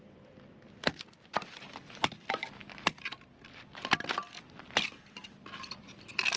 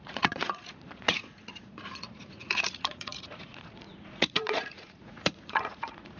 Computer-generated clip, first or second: second